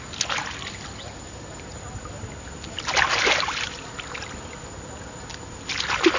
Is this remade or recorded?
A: recorded